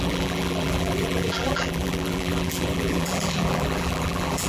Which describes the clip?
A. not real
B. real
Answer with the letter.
A